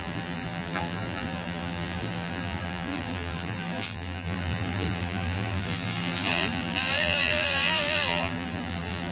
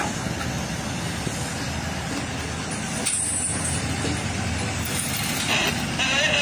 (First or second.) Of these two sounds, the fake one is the first